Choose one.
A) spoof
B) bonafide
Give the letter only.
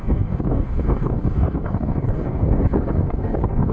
A